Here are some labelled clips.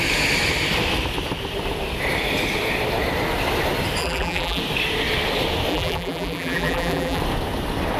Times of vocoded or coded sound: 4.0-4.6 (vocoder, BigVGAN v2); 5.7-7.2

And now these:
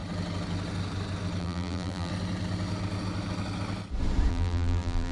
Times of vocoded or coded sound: 1.4-2.1 (vocoder, BigVGAN v2); 4.3-5.1

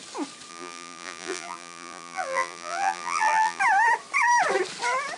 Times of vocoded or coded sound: 0.5-3.6 (vocoder, BigVGAN v2)